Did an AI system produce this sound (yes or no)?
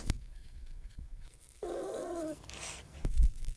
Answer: yes